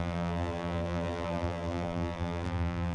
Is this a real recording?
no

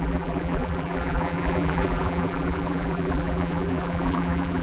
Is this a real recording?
no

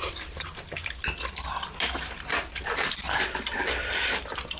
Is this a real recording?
no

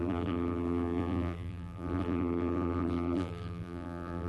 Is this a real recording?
no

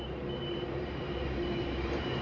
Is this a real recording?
no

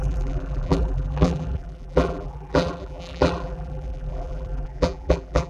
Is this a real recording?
no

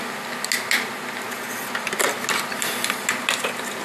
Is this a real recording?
yes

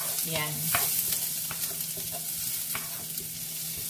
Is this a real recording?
yes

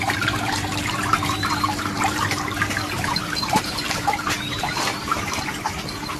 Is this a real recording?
no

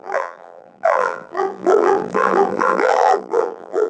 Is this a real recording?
no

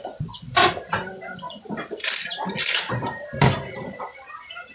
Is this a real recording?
no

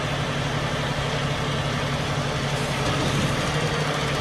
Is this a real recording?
yes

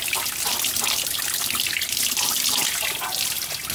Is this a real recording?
yes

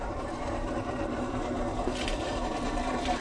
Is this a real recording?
no